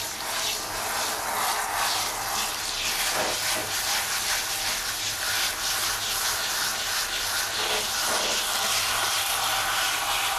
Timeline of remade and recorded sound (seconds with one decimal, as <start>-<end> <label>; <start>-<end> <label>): 0.0-10.4 recorded